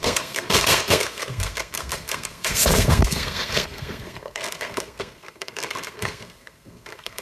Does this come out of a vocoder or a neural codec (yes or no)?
yes